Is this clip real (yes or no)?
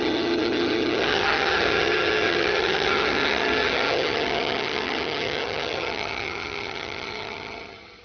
no